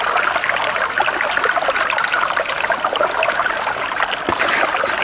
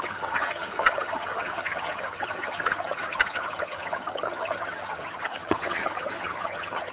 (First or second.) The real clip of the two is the first